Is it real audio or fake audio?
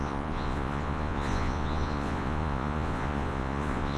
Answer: fake